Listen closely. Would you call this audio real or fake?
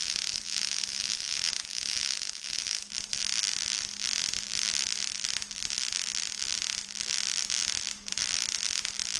fake